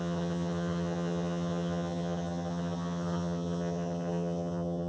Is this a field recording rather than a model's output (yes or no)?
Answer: no